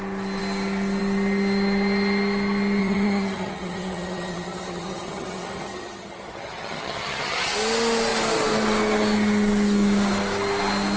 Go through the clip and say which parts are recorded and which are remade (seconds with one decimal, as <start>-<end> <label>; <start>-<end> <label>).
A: 0.0-2.8 recorded; 2.8-7.5 remade; 7.5-11.0 recorded